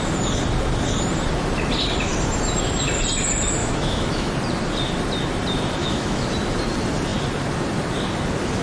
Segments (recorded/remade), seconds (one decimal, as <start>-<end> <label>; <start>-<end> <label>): 0.0-3.6 recorded; 3.6-4.3 remade; 4.3-5.8 recorded; 5.8-6.3 remade; 6.3-8.6 recorded